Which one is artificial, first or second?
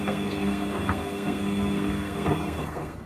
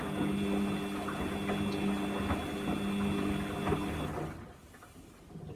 first